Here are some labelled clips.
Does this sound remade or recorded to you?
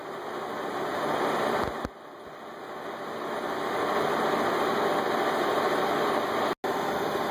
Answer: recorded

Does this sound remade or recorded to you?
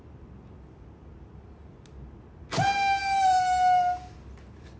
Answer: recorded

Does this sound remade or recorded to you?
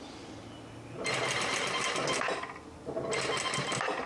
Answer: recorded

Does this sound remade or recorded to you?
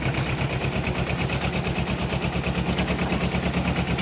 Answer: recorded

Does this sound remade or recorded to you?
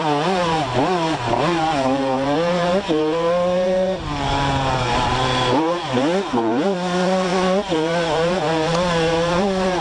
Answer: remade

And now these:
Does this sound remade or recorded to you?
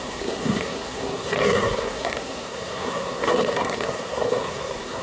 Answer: remade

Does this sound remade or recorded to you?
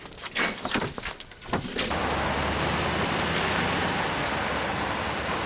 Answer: recorded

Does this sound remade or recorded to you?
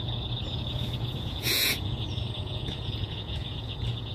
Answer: remade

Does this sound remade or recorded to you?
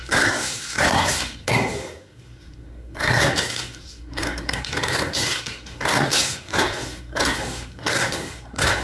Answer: remade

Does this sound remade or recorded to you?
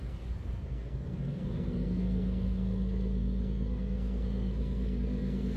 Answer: remade